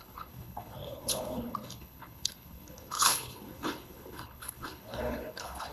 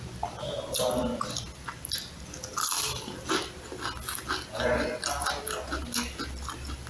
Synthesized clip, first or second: first